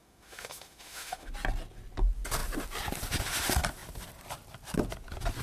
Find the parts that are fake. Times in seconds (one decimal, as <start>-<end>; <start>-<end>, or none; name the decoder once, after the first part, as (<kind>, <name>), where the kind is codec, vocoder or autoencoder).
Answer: 0.0-1.3 (autoencoder, DAC-VAE)